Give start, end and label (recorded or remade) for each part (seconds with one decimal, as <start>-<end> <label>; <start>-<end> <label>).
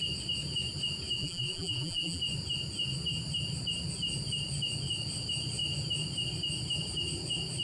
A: 0.0-1.2 recorded; 1.2-2.2 remade; 2.2-7.6 recorded